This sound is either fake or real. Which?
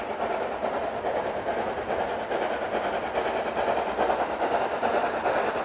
real